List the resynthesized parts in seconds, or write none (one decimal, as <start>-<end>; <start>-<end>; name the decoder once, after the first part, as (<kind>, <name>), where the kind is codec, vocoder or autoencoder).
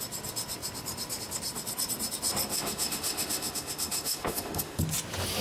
2.5-4.8 (autoencoder, DAC-VAE)